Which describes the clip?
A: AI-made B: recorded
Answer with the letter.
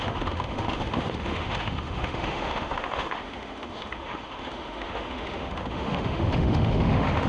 A